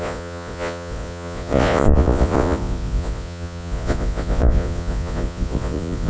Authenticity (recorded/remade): remade